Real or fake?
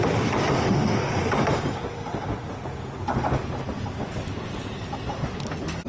real